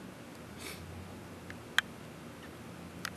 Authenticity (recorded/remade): recorded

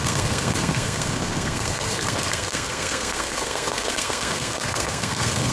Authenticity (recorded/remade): remade